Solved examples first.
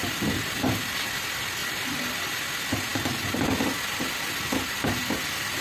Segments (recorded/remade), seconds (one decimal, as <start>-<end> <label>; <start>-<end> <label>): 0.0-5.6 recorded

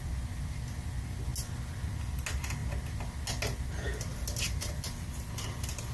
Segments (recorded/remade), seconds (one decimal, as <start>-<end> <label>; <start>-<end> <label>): 0.0-5.9 recorded

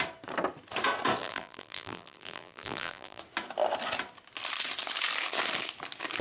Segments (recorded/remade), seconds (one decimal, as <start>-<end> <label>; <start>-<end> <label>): 0.0-1.2 recorded; 1.2-3.2 remade; 3.2-6.2 recorded